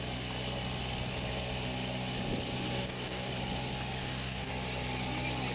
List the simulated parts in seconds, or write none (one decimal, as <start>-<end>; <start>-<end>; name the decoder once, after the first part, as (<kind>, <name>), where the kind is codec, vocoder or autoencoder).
2.7-3.3 (codec, DAC); 4.0-4.5